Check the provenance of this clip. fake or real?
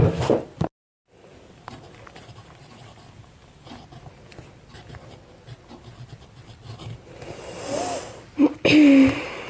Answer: real